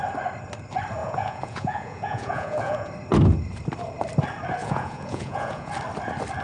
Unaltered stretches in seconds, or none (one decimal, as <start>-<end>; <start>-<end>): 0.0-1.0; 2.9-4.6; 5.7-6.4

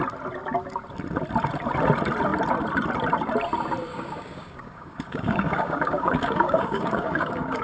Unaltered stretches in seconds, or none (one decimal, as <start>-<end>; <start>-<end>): 0.0-3.9

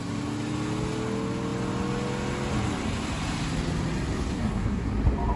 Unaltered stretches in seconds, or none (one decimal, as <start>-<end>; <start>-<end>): 0.0-4.3; 4.9-5.4

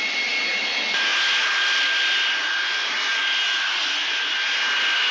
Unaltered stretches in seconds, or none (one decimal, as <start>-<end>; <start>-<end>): 0.0-5.1

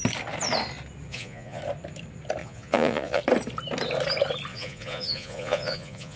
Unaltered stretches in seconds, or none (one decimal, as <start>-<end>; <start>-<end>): 0.0-1.1; 1.6-2.4; 3.2-4.5

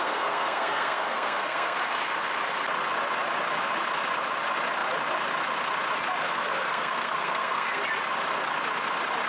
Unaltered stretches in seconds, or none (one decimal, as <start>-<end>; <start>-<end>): 1.8-6.2; 7.8-9.3